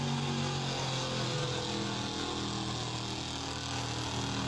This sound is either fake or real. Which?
real